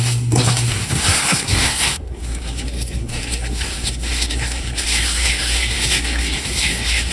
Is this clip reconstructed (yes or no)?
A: yes